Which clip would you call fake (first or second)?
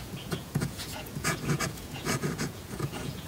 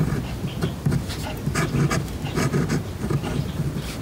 first